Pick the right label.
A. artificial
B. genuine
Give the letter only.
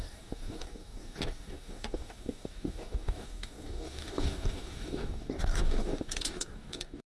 A